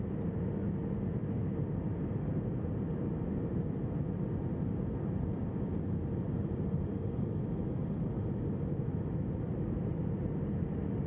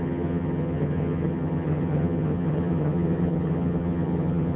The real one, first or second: first